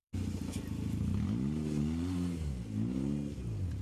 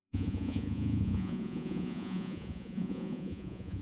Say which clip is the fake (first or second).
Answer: second